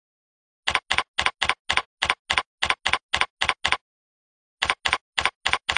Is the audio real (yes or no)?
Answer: yes